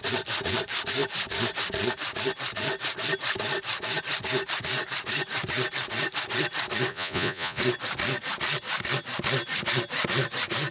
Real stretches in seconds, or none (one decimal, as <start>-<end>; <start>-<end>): 0.0-6.9; 7.6-10.7